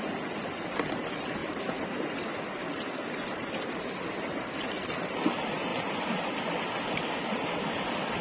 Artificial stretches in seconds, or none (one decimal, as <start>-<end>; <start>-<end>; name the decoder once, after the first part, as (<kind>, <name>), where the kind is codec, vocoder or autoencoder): none